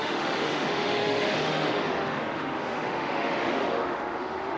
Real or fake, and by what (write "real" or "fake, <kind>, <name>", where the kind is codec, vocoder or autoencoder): fake, autoencoder, DAC-VAE